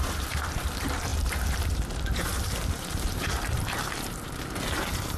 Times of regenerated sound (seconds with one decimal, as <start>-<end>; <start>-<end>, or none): 0.0-5.2